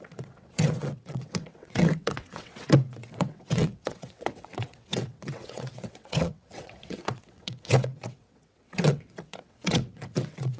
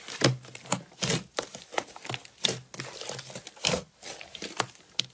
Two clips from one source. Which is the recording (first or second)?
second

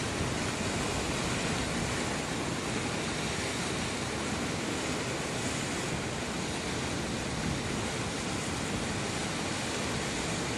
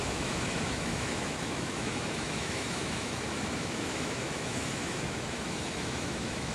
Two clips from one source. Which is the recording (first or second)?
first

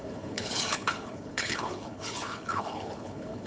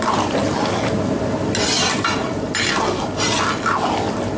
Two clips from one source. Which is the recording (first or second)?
second